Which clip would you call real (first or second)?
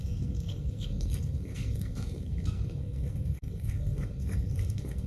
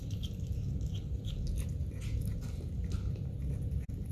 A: second